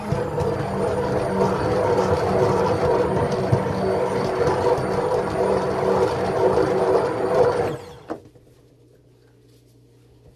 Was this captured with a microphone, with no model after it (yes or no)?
yes